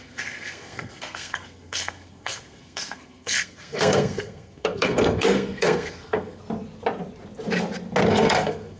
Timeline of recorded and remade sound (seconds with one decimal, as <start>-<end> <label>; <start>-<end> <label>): 0.0-6.4 remade; 6.4-8.1 recorded; 8.1-8.8 remade